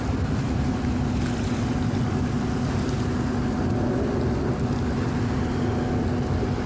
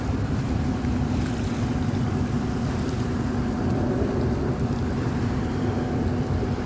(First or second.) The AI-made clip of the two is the second